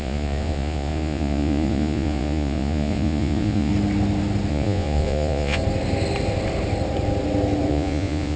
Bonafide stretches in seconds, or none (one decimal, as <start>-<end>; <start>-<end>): 3.7-4.5; 5.6-7.7